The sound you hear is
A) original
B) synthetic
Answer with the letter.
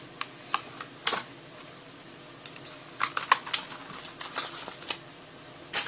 A